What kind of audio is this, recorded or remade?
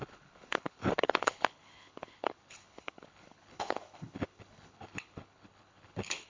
remade